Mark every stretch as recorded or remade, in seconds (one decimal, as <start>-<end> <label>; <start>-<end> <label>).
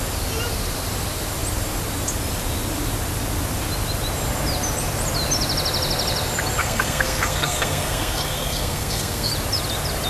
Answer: 0.0-6.6 recorded; 6.6-9.3 remade; 9.3-10.1 recorded